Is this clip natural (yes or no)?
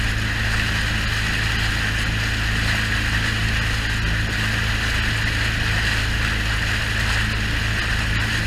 yes